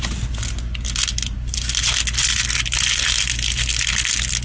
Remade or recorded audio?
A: recorded